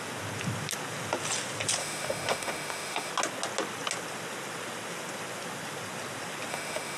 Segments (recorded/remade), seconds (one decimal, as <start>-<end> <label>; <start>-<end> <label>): 0.0-1.8 recorded; 1.8-3.1 remade; 3.1-6.5 recorded; 6.5-7.0 remade